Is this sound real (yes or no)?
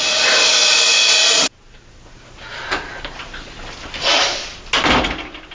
yes